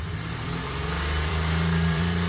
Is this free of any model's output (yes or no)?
no